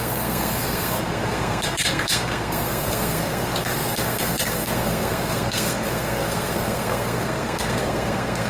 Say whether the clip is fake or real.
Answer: fake